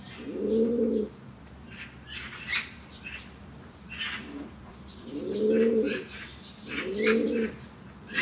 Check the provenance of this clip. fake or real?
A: fake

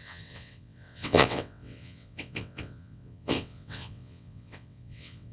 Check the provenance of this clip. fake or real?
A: fake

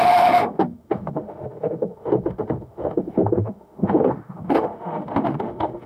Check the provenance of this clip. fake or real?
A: fake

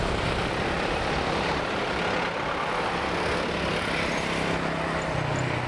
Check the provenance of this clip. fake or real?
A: real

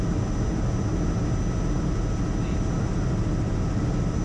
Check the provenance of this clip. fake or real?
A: real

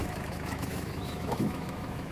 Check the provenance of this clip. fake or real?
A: fake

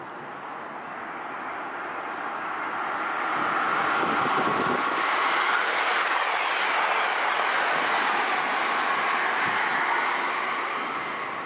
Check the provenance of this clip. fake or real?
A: real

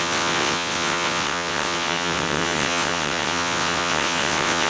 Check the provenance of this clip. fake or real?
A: fake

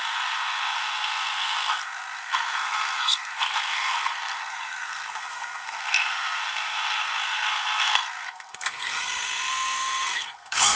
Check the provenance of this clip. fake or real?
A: fake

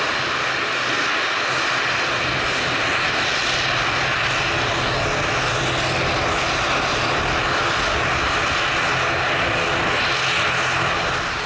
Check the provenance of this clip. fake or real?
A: real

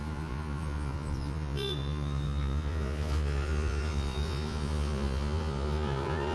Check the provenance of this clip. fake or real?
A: fake